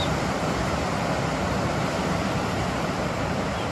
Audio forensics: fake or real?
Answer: real